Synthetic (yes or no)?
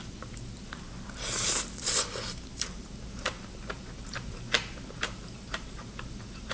yes